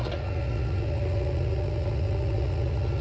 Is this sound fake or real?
fake